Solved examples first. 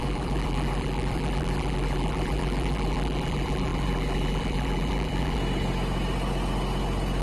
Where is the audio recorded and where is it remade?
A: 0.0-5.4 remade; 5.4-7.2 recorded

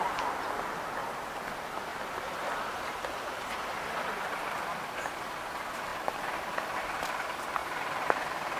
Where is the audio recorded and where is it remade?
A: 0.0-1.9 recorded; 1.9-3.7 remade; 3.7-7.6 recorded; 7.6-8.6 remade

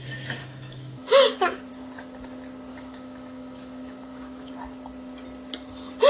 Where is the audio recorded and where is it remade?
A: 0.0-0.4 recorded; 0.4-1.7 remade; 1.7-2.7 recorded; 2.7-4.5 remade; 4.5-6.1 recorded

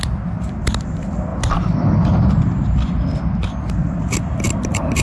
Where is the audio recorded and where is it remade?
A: 0.0-1.3 remade; 1.3-2.2 recorded; 2.2-5.0 remade

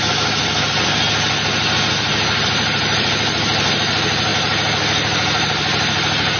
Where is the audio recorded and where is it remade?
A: 0.0-6.4 recorded